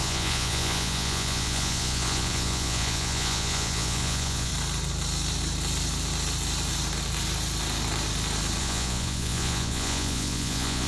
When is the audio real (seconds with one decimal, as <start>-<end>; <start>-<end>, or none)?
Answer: 4.5-8.6